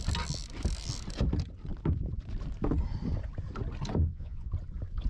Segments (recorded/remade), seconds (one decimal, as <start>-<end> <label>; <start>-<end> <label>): 0.0-4.0 recorded; 4.0-4.5 remade; 4.5-5.1 recorded